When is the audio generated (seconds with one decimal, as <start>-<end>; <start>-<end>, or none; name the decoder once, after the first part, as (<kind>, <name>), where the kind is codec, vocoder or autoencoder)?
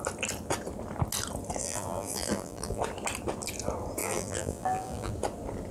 1.6-2.8 (vocoder, BigVGAN v2); 4.0-5.1